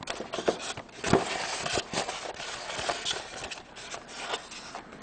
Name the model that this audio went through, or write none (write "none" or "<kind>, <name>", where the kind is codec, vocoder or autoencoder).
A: none